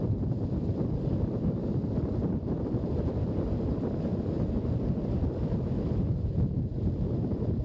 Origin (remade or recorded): recorded